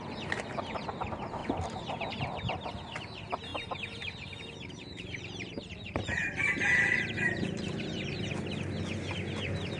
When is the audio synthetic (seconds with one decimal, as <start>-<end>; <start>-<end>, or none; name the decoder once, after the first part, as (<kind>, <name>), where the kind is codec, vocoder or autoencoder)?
1.4-2.1 (vocoder, BigVGAN v2); 3.5-8.3

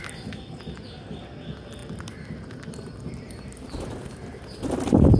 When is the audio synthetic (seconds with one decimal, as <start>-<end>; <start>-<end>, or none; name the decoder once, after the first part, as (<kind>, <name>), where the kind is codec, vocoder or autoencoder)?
none